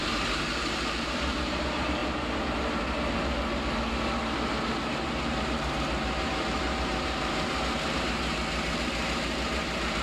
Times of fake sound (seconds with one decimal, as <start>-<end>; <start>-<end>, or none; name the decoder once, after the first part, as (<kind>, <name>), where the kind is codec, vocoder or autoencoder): 0.0-2.0 (vocoder, BigVGAN v2); 4.9-10.0